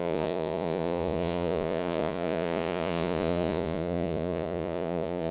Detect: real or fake fake